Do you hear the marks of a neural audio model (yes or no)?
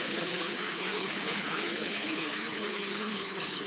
yes